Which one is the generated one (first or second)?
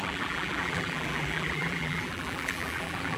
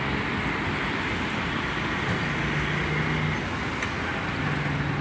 first